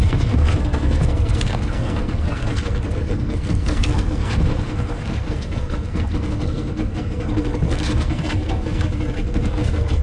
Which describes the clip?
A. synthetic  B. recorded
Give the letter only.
A